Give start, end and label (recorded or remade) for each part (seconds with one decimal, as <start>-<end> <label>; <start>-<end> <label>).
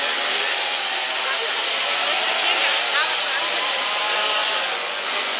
0.0-4.4 recorded; 4.4-5.4 remade